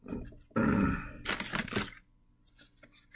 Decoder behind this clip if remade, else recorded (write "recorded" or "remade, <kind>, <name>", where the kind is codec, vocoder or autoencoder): recorded